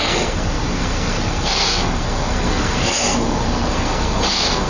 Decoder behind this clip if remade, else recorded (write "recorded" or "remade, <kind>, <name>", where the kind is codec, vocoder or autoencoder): remade, codec, SNAC